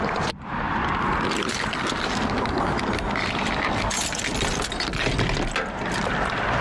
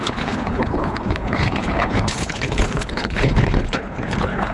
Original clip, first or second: first